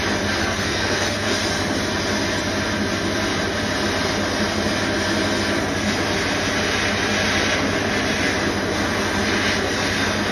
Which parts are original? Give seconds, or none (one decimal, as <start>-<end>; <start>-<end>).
0.0-0.4; 1.3-10.3